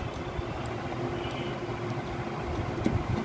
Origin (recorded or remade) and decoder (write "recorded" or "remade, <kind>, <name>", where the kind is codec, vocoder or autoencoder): recorded